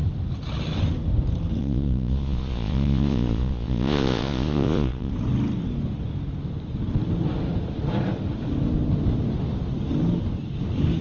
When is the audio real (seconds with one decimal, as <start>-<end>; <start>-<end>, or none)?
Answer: 0.0-1.6; 5.1-11.0